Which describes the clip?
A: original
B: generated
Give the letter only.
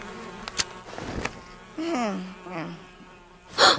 A